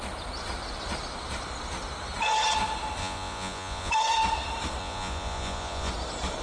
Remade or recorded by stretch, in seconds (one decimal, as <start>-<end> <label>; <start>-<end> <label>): 0.0-3.0 recorded; 3.0-3.9 remade; 3.9-4.8 recorded; 4.8-5.9 remade; 5.9-6.4 recorded